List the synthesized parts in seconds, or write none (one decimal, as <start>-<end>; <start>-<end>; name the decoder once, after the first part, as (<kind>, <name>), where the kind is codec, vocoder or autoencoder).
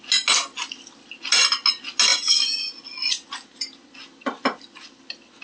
none